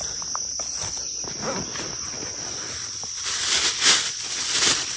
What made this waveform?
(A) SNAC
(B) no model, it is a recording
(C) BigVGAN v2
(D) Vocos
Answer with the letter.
B